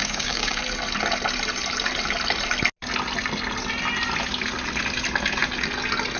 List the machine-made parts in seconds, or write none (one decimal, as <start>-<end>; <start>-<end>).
0.0-0.6